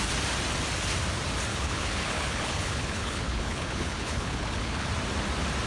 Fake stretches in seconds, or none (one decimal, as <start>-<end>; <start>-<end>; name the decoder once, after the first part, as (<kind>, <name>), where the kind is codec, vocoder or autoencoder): 1.5-4.9 (codec, HILCodec)